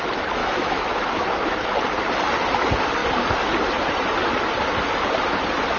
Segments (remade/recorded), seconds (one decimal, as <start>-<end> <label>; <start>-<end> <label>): 0.0-0.4 recorded; 0.4-1.7 remade; 1.7-5.8 recorded